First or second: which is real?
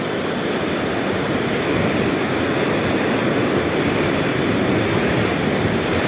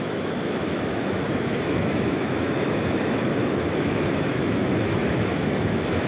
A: first